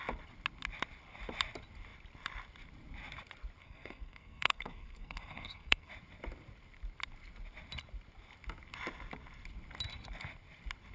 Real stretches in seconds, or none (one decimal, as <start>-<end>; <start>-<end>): 0.0-3.6; 5.9-10.9